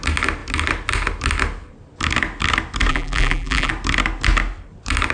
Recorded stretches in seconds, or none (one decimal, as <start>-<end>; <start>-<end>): 0.0-2.9; 3.7-5.1